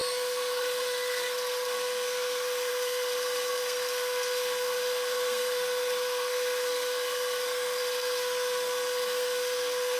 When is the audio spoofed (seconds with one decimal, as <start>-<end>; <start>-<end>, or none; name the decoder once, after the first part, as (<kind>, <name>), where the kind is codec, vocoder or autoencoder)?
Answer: 0.0-10.0 (codec, SNAC)